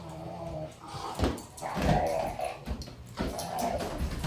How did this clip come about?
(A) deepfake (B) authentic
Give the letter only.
B